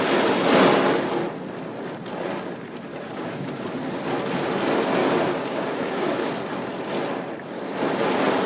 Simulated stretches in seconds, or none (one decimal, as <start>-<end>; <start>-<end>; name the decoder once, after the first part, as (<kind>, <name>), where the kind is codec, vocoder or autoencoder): 2.9-3.6 (codec, DAC); 5.0-6.3